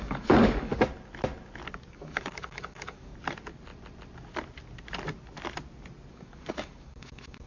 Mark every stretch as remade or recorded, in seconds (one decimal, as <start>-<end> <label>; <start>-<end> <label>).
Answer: 0.0-0.7 remade; 0.7-1.9 recorded; 1.9-3.1 remade; 3.1-6.1 recorded; 6.1-7.5 remade

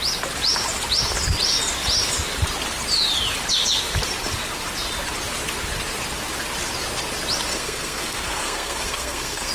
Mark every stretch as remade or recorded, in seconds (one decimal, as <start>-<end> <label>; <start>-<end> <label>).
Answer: 0.0-7.5 recorded; 7.5-9.5 remade

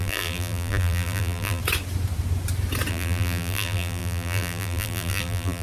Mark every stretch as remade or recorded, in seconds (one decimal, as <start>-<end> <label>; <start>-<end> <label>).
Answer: 0.0-1.6 remade; 1.6-2.9 recorded; 2.9-5.6 remade

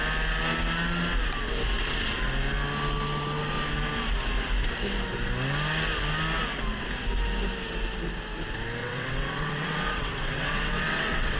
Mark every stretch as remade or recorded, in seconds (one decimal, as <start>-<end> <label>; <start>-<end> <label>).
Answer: 0.0-8.8 recorded; 8.8-11.4 remade

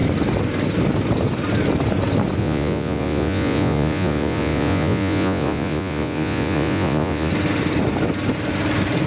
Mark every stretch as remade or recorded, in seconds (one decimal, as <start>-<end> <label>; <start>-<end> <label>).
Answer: 0.0-2.4 recorded; 2.4-7.3 remade; 7.3-9.1 recorded